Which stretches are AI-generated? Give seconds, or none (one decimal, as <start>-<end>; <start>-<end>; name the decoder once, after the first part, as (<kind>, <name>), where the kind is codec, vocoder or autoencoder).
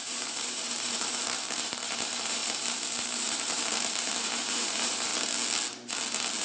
0.0-5.1 (vocoder, BigVGAN v2)